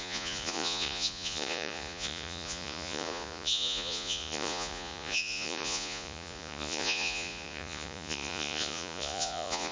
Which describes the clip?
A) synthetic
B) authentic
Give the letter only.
A